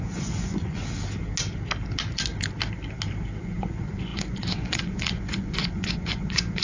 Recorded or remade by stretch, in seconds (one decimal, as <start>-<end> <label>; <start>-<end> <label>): 0.0-0.8 remade; 0.8-3.4 recorded; 3.4-6.6 remade

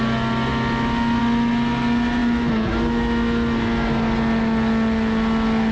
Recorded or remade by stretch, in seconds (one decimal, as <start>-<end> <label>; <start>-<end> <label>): 0.0-5.7 recorded

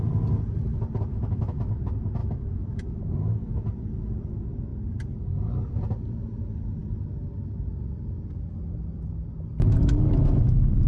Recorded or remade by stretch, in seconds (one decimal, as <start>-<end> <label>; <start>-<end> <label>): 0.0-1.1 recorded; 1.1-1.6 remade; 1.6-2.2 recorded; 2.2-3.0 remade; 3.0-10.9 recorded

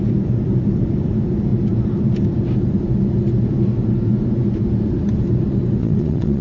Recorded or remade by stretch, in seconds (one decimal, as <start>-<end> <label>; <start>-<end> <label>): 0.0-5.8 recorded; 5.8-6.4 remade

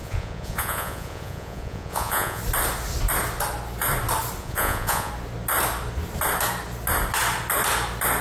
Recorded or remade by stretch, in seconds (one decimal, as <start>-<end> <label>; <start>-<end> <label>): 0.0-2.4 remade; 2.4-4.4 recorded; 4.4-5.1 remade; 5.1-8.2 recorded

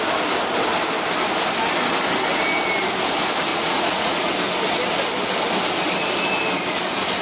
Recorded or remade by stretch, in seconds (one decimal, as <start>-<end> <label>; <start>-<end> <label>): 0.0-3.5 recorded; 3.5-4.3 remade; 4.3-7.2 recorded